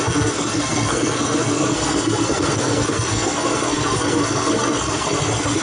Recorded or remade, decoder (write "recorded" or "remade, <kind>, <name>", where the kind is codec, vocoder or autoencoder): remade, codec, SNAC